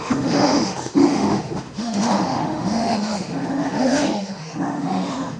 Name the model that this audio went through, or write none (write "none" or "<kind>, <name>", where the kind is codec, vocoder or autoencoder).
autoencoder, DAC-VAE